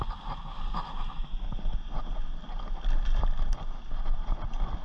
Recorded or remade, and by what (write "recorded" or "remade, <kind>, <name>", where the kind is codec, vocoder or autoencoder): recorded